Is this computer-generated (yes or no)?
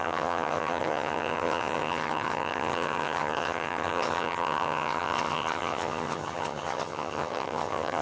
yes